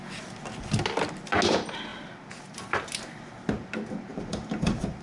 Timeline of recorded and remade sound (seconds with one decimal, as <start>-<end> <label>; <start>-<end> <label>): 0.0-4.1 recorded; 4.1-5.0 remade